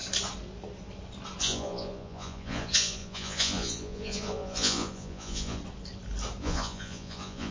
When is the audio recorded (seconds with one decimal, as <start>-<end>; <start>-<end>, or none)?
0.0-1.4; 5.6-6.4